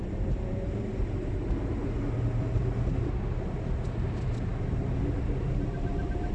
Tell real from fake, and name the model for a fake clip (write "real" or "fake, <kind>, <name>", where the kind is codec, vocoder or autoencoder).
real